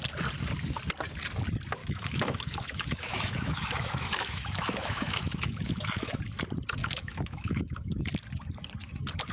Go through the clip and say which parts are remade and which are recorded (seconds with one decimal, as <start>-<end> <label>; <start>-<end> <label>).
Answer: 0.0-1.8 recorded; 1.8-6.2 remade; 6.2-6.8 recorded; 6.8-8.1 remade; 8.1-9.3 recorded